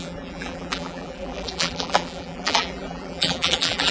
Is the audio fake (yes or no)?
yes